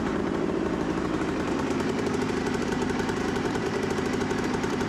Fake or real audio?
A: fake